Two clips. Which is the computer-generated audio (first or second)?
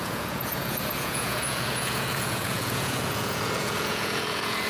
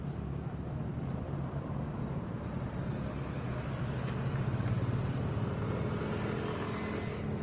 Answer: first